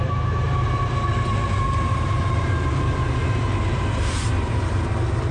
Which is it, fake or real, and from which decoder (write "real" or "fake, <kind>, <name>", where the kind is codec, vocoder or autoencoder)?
fake, vocoder, BigVGAN v2